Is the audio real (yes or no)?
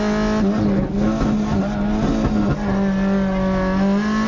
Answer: yes